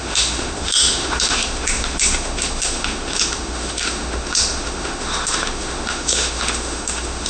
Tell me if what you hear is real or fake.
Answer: fake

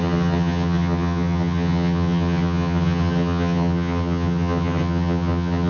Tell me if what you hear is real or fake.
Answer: fake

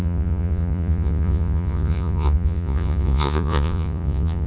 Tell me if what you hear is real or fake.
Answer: fake